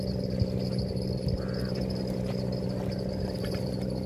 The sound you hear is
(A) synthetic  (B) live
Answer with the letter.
B